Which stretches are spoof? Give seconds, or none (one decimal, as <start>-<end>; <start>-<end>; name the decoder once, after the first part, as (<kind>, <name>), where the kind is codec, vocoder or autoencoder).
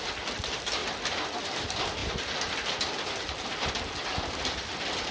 none